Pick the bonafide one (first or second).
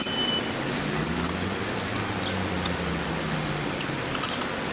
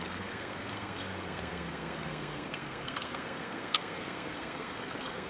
first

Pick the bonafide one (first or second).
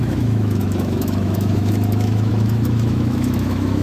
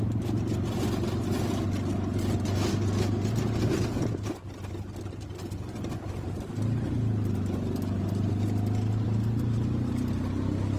second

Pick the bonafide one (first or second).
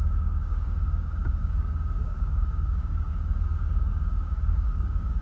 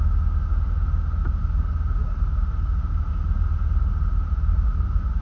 second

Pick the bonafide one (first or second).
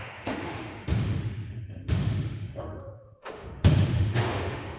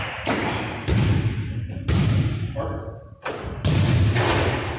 second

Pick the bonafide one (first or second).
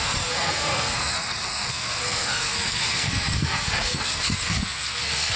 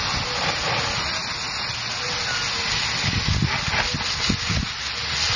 second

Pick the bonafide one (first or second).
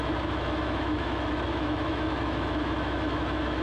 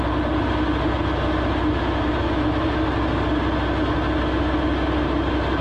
second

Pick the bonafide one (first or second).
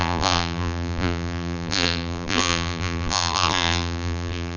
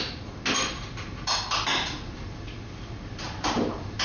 second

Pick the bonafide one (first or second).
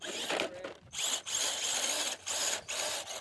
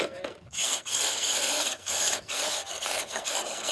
first